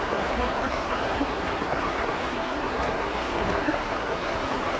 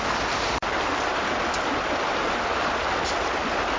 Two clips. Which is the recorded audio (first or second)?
second